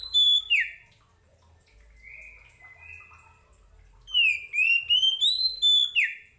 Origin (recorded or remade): recorded